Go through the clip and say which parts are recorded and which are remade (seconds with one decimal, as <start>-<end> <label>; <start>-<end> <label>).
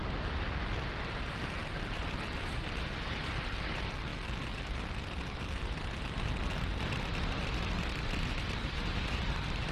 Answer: 0.0-9.7 recorded